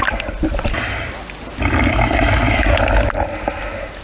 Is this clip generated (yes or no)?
no